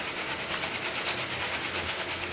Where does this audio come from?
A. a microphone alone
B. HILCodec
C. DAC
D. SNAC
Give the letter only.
A